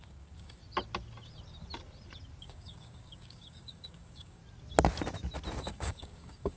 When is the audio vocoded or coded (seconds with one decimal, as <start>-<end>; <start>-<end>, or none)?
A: 0.0-0.6; 2.4-4.4; 5.6-6.6